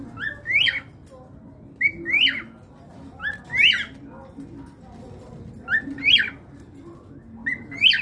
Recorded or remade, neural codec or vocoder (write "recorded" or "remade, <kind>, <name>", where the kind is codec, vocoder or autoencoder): recorded